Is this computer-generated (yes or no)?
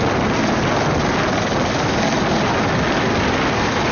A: no